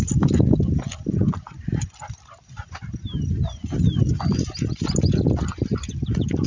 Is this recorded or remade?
recorded